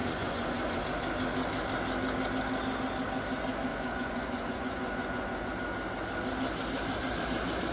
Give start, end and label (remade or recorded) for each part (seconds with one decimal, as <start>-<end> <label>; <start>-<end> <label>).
0.0-0.8 remade; 0.8-3.7 recorded; 3.7-5.5 remade; 5.5-7.7 recorded